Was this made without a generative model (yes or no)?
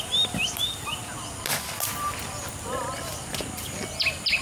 yes